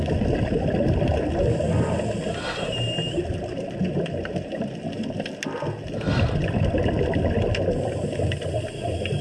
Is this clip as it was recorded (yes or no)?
yes